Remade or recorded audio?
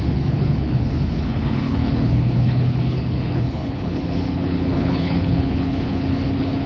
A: remade